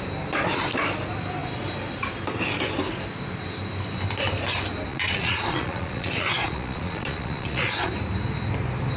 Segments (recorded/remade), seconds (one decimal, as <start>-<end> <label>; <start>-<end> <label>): 0.0-4.9 recorded; 4.9-7.9 remade; 7.9-9.0 recorded